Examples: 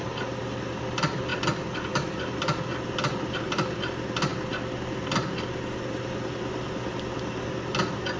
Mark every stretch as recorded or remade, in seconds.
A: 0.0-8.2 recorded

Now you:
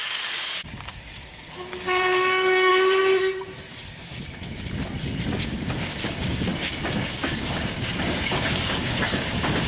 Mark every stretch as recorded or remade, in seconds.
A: 0.0-2.7 remade; 2.7-5.4 recorded; 5.4-6.5 remade; 6.5-7.3 recorded; 7.3-9.7 remade